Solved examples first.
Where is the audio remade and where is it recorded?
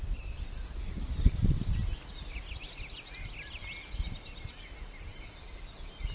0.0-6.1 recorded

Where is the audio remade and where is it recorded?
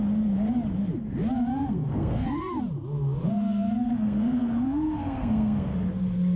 0.0-1.5 recorded; 1.5-2.6 remade; 2.6-3.2 recorded; 3.2-5.9 remade; 5.9-6.4 recorded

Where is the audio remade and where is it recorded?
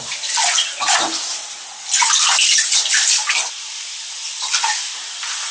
0.0-5.5 recorded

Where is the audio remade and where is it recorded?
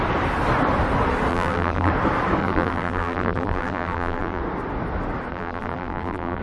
0.0-1.3 recorded; 1.3-1.9 remade; 1.9-2.4 recorded; 2.4-4.4 remade; 4.4-5.3 recorded; 5.3-6.4 remade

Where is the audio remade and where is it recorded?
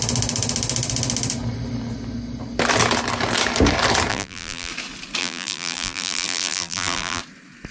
0.0-4.1 recorded; 4.1-4.7 remade; 4.7-5.2 recorded; 5.2-7.2 remade; 7.2-7.7 recorded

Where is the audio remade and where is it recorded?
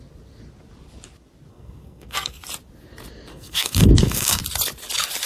0.0-1.5 recorded; 1.5-2.4 remade; 2.4-3.3 recorded; 3.3-4.4 remade; 4.4-5.3 recorded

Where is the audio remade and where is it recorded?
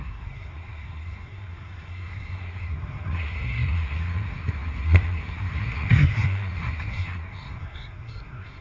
0.0-8.6 remade